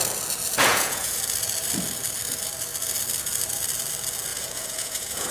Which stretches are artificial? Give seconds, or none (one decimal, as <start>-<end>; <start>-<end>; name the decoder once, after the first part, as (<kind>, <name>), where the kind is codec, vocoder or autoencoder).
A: 0.7-1.2 (vocoder, Vocos); 4.3-5.3